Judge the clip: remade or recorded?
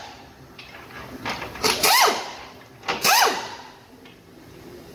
recorded